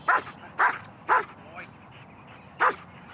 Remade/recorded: recorded